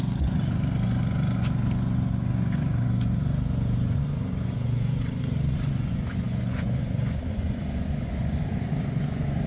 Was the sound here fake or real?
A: fake